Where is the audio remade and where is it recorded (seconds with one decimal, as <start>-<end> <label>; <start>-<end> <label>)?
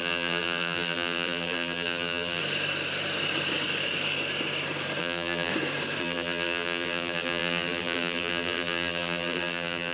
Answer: 0.0-2.4 remade; 2.4-5.0 recorded; 5.0-5.5 remade; 5.5-6.0 recorded; 6.0-9.9 remade